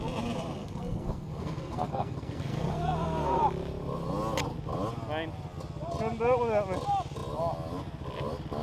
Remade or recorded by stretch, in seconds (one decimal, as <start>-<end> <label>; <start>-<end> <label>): 0.0-0.6 recorded; 0.6-3.4 remade; 3.4-8.6 recorded